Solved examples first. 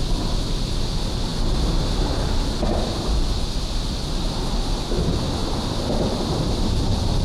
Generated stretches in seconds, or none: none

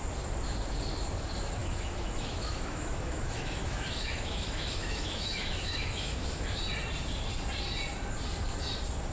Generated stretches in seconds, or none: 1.6-6.6

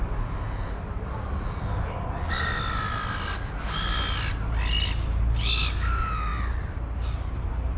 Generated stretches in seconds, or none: none

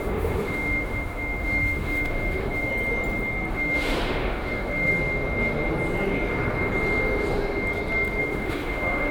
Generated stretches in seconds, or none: 0.0-2.7; 3.5-4.9; 8.2-9.1

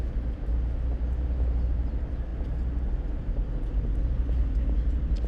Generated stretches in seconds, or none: none

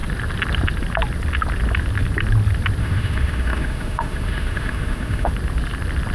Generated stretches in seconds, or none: 2.8-5.3